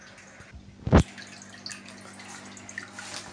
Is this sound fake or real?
real